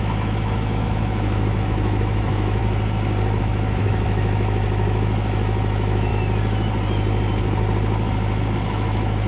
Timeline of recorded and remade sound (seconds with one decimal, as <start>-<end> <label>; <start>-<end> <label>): 0.0-2.6 remade; 2.6-3.4 recorded; 3.4-6.1 remade; 6.1-8.6 recorded; 8.6-9.3 remade